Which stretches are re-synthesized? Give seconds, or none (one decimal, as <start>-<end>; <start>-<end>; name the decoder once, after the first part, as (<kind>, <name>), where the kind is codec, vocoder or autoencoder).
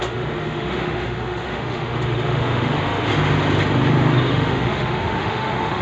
0.0-3.1 (autoencoder, DAC-VAE); 4.3-5.8